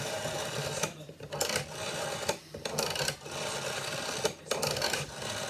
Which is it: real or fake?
fake